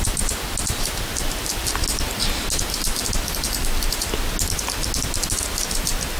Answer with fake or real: real